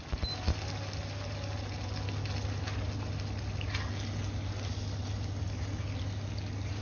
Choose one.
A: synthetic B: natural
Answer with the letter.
B